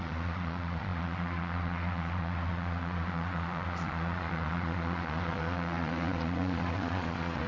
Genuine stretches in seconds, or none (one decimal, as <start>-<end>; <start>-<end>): none